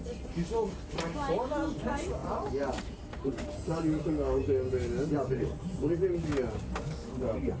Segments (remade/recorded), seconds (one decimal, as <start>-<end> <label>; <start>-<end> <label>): 0.0-2.2 recorded; 2.2-4.1 remade; 4.1-7.6 recorded